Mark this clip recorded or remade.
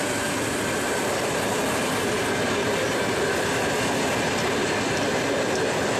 recorded